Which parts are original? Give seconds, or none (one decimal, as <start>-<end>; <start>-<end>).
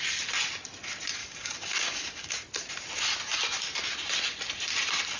0.0-1.2; 2.4-5.2